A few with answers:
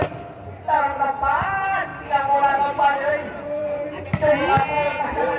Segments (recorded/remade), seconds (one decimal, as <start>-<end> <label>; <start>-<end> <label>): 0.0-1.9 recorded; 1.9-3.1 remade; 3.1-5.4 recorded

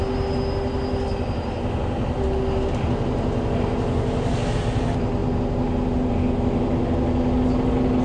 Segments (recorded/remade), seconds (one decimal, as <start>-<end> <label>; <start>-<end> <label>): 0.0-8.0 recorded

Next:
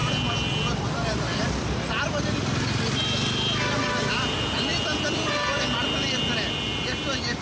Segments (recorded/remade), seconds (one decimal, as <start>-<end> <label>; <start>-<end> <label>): 0.0-7.4 recorded